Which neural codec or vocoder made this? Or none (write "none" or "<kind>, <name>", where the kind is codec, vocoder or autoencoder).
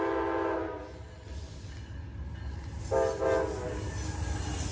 none